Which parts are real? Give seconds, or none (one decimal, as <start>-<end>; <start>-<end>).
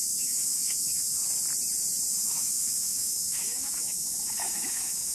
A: 1.2-2.1